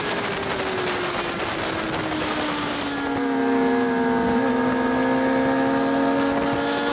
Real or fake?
real